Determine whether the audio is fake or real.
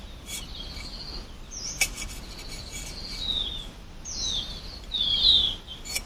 real